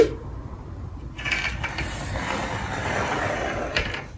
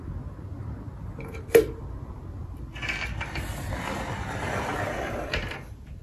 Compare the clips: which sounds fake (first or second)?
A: first